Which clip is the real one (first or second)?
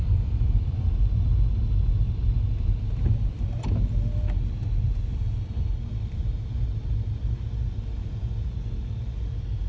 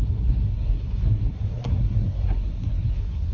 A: first